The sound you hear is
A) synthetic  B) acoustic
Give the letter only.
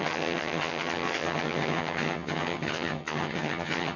A